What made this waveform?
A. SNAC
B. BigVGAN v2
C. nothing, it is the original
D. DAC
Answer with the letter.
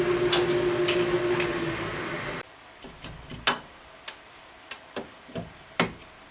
C